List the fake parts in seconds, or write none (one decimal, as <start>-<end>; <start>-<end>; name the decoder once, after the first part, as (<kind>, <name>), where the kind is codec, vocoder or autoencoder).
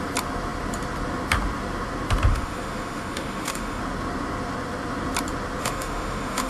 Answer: 2.3-3.8 (autoencoder, DAC-VAE); 5.6-6.5